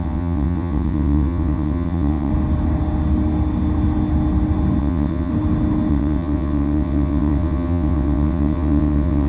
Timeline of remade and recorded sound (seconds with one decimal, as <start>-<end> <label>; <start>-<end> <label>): 0.0-2.3 remade; 2.3-4.8 recorded; 4.8-5.3 remade; 5.3-5.9 recorded; 5.9-9.3 remade